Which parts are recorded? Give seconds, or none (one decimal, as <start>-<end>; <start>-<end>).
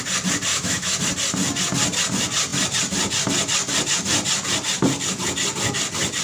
0.0-0.5; 1.0-6.2